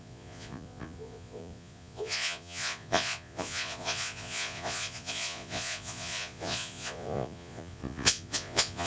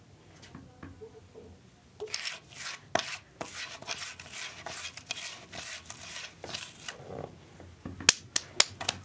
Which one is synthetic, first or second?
first